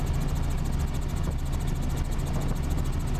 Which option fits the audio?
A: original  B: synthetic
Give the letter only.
A